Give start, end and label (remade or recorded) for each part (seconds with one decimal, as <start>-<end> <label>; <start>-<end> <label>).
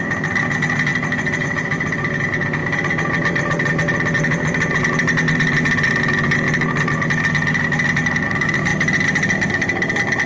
0.0-10.3 recorded